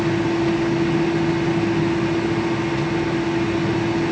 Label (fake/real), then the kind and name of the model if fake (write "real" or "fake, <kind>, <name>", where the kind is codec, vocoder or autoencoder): real